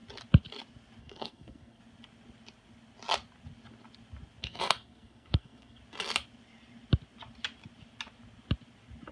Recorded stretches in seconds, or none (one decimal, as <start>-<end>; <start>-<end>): 0.0-1.0; 1.8-4.4; 5.8-9.1